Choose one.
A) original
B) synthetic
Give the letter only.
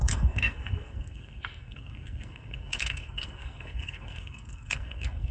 B